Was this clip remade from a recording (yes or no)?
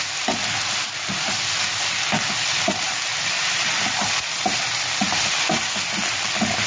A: no